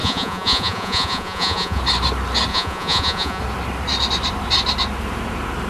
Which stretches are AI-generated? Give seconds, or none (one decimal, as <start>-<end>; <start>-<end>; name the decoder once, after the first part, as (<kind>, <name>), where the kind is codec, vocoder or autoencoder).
0.0-1.8 (vocoder, Vocos); 2.5-3.4